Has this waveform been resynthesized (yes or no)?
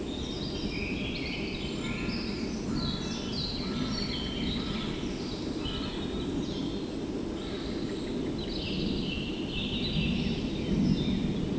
no